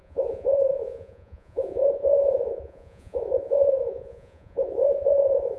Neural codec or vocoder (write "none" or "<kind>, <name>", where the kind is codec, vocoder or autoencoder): vocoder, Vocos